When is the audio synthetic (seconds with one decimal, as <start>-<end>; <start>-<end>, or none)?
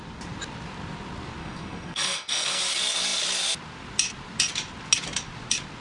1.4-2.6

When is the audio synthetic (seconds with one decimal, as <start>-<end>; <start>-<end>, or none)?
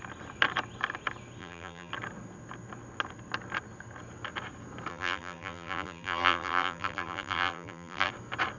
1.4-1.9; 4.9-8.1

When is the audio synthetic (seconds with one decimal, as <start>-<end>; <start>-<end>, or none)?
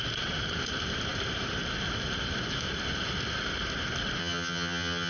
4.2-5.1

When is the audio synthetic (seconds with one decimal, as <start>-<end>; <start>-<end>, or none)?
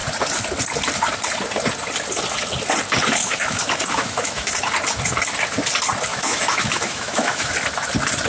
3.2-4.5; 6.1-7.5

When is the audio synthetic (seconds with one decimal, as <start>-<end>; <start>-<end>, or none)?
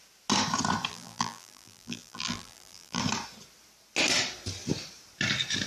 0.9-3.0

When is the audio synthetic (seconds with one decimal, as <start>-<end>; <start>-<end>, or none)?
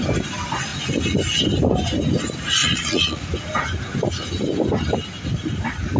2.6-3.2